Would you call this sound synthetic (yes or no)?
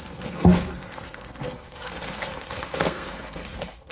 yes